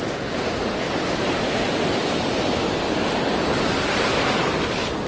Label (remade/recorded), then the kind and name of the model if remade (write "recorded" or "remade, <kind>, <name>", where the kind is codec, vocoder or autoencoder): recorded